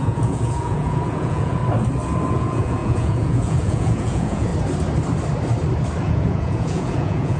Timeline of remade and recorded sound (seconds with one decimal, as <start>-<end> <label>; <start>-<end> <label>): 0.0-1.6 remade; 1.6-2.3 recorded; 2.3-4.5 remade; 4.5-6.0 recorded; 6.0-7.4 remade